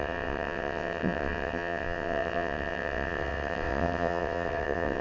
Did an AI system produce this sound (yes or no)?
yes